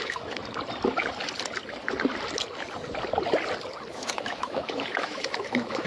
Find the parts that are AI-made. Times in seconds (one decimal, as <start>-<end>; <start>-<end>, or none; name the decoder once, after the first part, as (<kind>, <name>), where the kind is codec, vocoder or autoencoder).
0.0-0.4 (autoencoder, DAC-VAE); 3.9-5.9